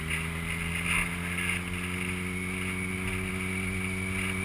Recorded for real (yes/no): yes